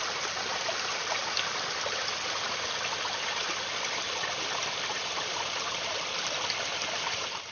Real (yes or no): yes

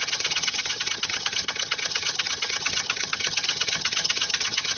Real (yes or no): no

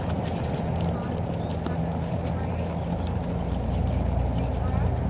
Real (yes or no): yes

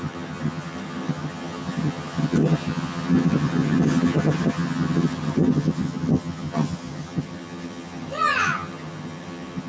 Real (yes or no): no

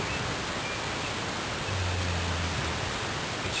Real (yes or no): yes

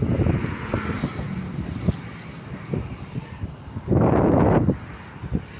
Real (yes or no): yes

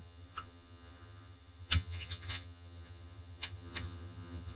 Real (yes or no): no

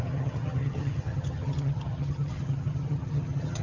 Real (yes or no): no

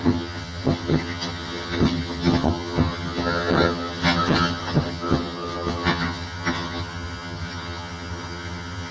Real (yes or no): no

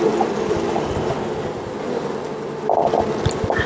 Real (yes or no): yes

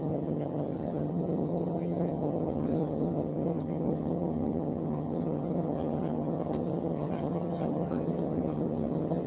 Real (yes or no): no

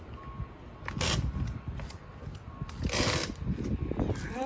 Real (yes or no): yes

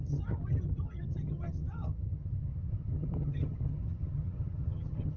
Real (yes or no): no